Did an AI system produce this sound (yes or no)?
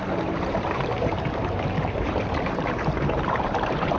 yes